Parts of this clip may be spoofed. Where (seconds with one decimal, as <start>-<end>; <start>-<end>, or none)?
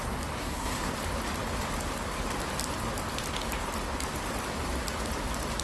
0.4-0.9